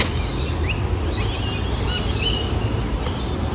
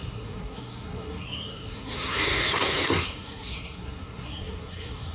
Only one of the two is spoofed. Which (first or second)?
second